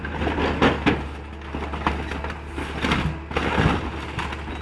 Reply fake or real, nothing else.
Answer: real